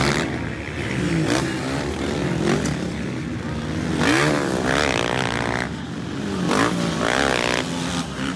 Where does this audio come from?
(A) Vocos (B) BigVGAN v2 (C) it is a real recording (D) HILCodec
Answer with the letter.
C